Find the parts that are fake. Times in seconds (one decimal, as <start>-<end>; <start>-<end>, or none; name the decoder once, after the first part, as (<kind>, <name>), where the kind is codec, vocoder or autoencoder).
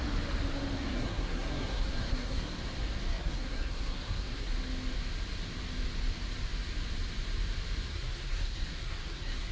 0.8-2.6 (codec, SNAC); 3.1-4.5; 7.9-9.5